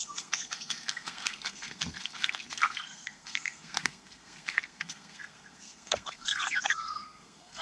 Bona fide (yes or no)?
no